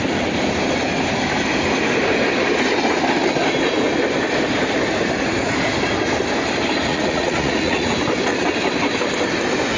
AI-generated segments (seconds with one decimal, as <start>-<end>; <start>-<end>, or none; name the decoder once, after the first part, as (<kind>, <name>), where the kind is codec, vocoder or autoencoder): 6.9-7.9 (vocoder, Vocos)